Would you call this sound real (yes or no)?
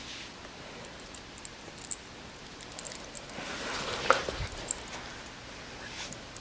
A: yes